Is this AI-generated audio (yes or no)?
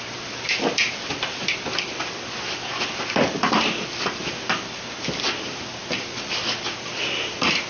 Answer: no